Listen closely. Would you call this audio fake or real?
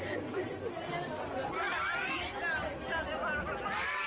real